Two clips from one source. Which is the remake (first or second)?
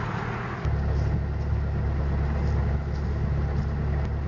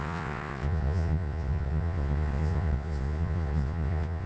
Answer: second